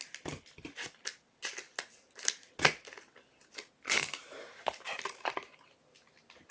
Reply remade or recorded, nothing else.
recorded